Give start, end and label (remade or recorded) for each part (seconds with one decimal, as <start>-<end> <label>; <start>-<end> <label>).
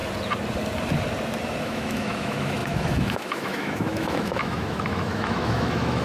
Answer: 0.0-1.6 recorded; 1.6-6.0 remade